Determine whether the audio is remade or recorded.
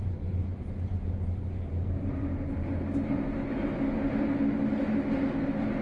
recorded